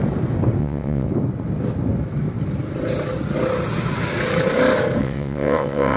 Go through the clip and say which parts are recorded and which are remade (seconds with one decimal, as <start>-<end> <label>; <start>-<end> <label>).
0.0-0.6 recorded; 0.6-1.1 remade; 1.1-5.0 recorded; 5.0-6.0 remade